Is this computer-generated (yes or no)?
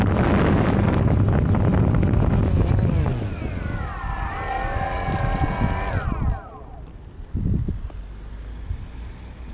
no